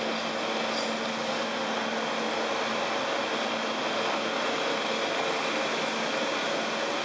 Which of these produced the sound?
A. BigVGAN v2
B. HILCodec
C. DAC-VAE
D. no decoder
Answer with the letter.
D